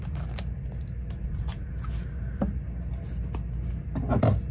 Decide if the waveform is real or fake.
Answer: real